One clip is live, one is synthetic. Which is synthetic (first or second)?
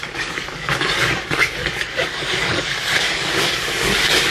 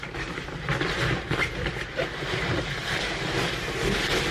first